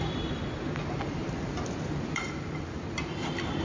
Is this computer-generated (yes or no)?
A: yes